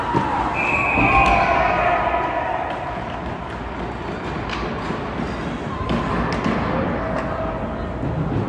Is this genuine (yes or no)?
yes